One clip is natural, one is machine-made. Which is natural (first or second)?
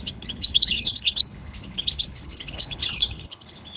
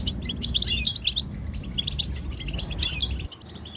second